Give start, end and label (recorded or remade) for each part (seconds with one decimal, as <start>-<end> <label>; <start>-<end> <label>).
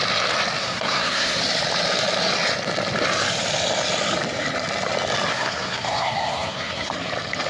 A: 0.0-0.6 recorded; 0.6-1.4 remade; 1.4-5.3 recorded; 5.3-6.9 remade; 6.9-7.5 recorded